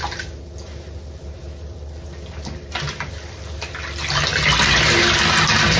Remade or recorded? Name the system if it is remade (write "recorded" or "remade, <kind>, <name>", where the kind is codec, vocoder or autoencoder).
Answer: recorded